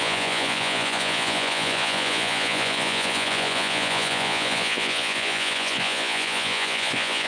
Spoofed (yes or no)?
yes